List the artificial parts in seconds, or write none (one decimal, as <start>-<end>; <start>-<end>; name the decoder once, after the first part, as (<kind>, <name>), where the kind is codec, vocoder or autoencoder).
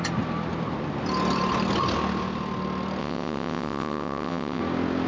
3.0-4.6 (vocoder, WaveNeXt)